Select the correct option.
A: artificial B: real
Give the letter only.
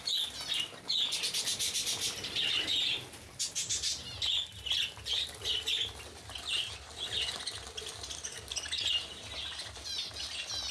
B